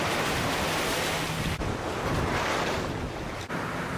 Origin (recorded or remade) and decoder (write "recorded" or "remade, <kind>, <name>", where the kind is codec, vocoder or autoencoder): recorded